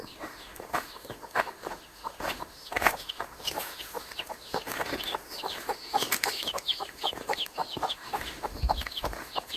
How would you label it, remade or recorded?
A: remade